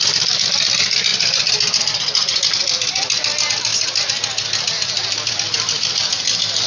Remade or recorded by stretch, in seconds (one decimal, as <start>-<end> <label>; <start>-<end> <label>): 0.0-1.1 remade; 1.1-2.5 recorded; 2.5-3.7 remade; 3.7-5.3 recorded; 5.3-6.7 remade